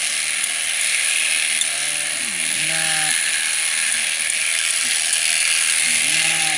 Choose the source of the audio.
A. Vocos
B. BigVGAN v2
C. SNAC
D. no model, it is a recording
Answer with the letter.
D